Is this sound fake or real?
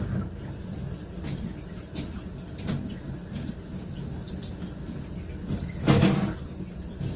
real